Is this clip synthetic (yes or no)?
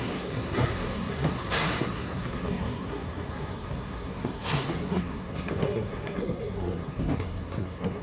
yes